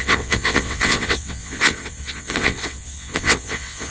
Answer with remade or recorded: remade